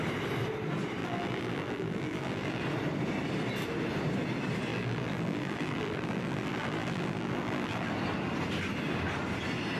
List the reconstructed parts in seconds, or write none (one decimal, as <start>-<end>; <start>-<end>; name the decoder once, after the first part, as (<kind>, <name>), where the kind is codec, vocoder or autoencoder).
1.0-2.6 (vocoder, BigVGAN v2); 4.7-7.9